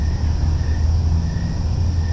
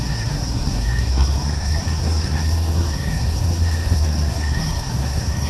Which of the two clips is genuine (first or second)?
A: first